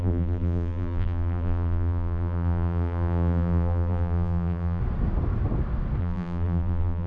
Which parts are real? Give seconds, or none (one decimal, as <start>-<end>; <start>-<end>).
4.8-6.0